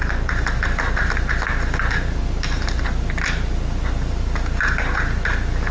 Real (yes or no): yes